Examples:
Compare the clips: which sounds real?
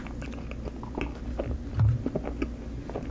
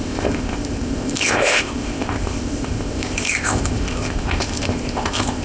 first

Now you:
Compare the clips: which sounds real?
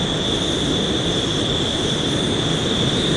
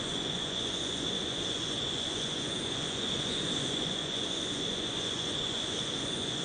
first